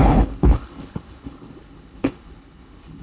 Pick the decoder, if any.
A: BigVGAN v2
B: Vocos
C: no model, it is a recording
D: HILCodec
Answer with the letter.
D